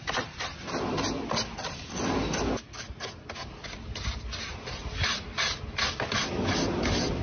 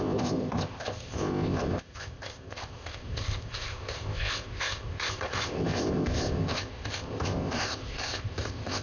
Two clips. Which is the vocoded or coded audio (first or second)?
second